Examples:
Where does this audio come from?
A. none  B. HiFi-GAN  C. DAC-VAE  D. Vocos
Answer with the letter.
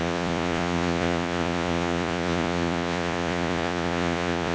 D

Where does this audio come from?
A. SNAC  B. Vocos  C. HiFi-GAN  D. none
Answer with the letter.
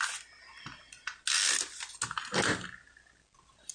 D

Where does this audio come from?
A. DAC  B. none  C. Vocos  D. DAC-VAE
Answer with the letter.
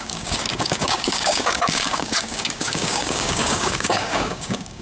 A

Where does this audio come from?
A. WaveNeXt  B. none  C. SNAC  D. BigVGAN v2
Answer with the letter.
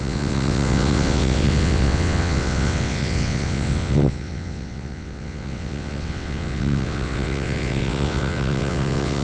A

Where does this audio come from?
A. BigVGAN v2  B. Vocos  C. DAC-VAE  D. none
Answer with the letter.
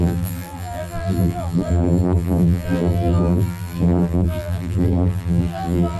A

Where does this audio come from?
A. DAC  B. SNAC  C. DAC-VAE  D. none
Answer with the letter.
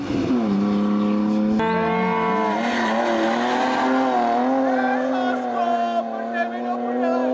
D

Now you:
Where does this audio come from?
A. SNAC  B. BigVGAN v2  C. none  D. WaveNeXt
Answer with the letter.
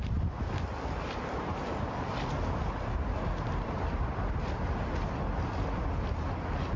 B